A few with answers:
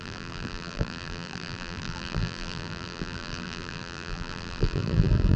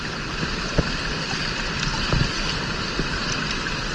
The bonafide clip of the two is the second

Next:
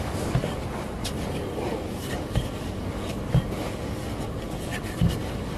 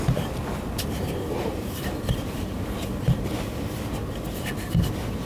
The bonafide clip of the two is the second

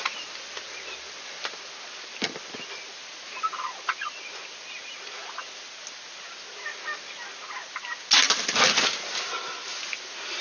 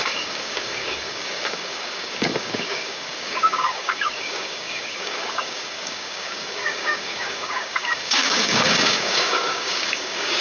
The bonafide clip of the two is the first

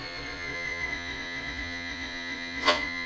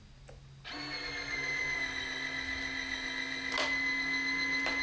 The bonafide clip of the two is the second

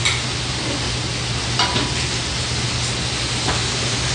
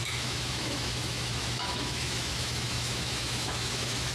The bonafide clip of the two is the first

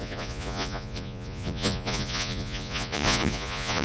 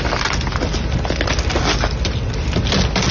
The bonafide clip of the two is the second